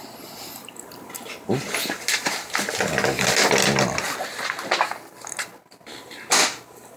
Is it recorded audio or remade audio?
recorded